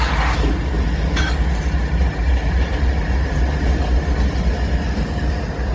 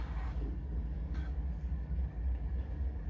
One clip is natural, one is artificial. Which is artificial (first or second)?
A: second